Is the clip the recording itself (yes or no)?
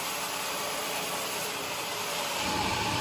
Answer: no